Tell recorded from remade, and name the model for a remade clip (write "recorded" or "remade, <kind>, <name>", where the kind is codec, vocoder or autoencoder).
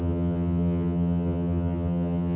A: remade, vocoder, HiFi-GAN